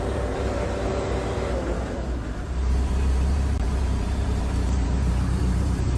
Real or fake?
fake